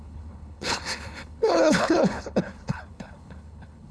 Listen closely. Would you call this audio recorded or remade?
remade